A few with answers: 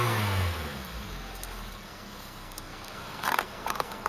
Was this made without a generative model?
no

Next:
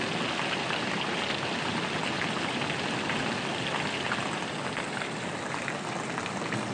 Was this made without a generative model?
yes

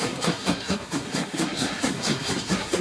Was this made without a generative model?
no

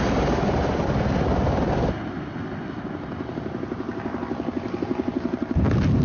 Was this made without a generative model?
yes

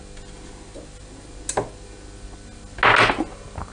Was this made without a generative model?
yes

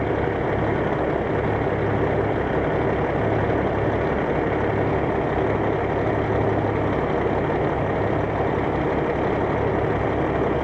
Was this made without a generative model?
yes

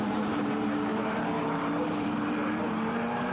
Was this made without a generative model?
no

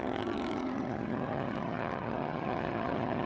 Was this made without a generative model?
no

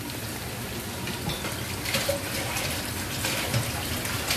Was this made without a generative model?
yes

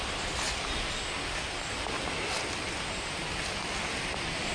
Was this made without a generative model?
yes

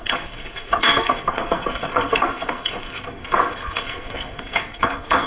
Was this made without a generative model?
no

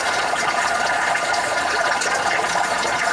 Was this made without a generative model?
no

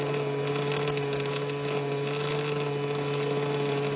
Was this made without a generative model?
yes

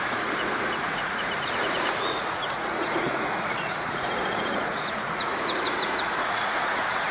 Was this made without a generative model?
no